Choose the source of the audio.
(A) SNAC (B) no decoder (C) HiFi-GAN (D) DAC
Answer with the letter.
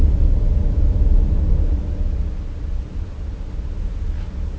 B